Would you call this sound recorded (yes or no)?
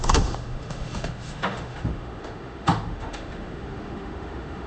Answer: no